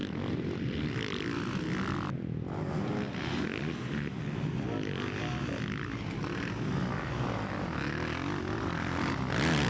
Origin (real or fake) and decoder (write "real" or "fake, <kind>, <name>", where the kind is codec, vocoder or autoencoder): real